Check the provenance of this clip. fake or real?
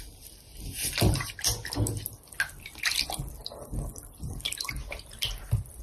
real